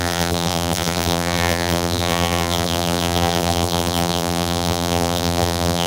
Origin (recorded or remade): remade